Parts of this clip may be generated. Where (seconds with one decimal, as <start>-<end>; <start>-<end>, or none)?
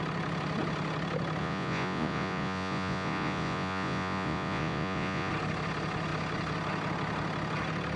1.4-5.3